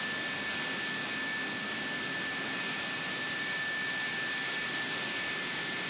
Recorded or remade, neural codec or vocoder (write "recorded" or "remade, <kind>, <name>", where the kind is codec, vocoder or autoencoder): recorded